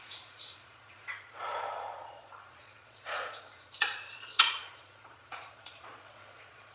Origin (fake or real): fake